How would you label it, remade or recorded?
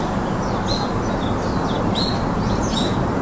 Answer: recorded